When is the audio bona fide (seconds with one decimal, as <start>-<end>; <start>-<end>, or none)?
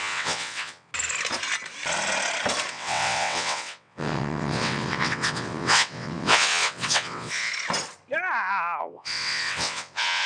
0.9-2.7; 7.5-8.8